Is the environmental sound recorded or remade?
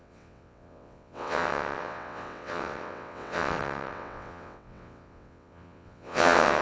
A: remade